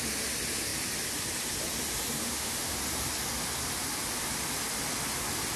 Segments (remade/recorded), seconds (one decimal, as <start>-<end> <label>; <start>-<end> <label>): 0.0-2.2 recorded; 2.2-2.8 remade; 2.8-5.6 recorded